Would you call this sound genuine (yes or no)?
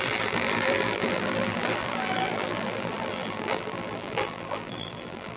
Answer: no